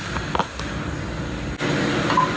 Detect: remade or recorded recorded